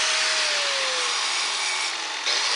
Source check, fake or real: real